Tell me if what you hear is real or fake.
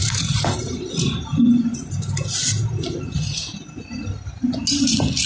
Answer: real